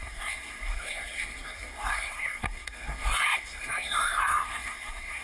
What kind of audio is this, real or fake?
fake